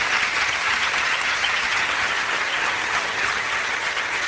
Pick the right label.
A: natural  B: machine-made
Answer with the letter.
B